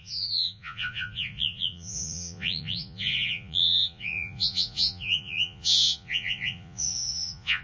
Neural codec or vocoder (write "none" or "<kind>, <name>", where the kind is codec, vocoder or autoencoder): vocoder, Vocos